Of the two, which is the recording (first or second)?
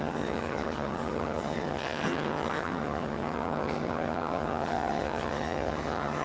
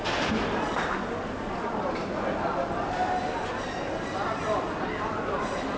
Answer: second